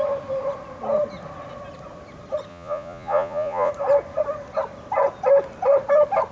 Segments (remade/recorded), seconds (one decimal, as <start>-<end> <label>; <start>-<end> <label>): 0.0-2.5 recorded; 2.5-3.7 remade; 3.7-6.3 recorded